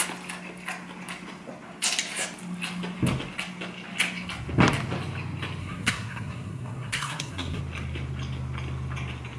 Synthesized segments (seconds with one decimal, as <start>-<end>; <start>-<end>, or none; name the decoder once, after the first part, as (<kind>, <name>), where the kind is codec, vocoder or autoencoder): 5.6-7.6 (codec, SNAC)